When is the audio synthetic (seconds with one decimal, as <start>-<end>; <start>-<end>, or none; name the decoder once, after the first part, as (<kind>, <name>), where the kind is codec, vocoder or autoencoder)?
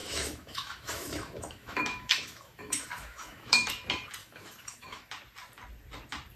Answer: 0.0-3.7 (autoencoder, DAC-VAE); 4.2-5.1